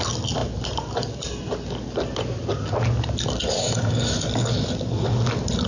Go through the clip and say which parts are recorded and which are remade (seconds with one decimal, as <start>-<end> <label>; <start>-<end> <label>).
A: 0.0-5.7 recorded